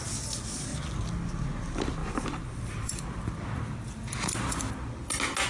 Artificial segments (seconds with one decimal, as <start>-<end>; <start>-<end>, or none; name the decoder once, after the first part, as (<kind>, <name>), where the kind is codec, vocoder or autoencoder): 2.0-4.6 (vocoder, BigVGAN v2)

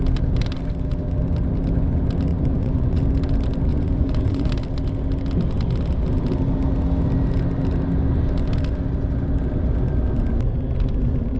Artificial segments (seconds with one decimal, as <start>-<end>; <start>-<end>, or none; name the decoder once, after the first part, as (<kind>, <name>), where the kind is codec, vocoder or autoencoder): 2.3-3.0 (vocoder, Vocos); 3.7-4.5

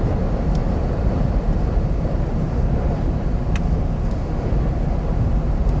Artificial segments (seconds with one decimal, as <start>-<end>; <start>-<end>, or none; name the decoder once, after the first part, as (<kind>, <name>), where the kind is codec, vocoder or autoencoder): 0.6-4.1 (vocoder, BigVGAN v2)

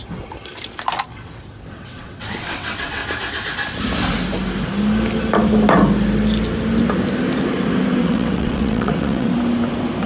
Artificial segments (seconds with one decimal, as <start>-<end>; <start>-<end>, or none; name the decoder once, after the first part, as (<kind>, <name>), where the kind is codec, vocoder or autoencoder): 1.7-3.0 (vocoder, WaveNeXt); 8.0-9.3

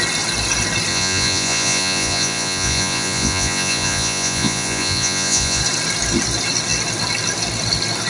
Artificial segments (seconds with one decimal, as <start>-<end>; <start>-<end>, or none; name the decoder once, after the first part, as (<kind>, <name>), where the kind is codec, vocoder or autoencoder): 0.9-5.6 (vocoder, Vocos)

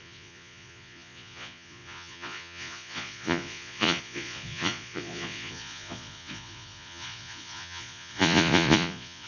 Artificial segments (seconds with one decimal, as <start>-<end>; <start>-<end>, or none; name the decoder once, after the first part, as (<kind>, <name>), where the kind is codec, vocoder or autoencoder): 0.0-9.3 (vocoder, Vocos)

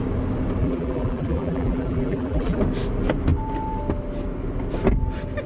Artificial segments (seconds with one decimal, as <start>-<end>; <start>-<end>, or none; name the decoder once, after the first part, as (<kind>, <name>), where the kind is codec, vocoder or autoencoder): 0.6-2.6 (vocoder, BigVGAN v2)